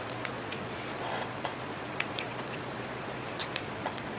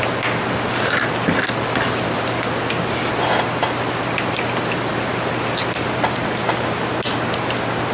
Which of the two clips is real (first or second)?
second